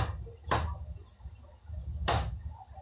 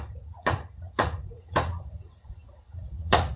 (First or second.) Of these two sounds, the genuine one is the first